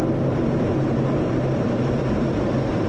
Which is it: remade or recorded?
remade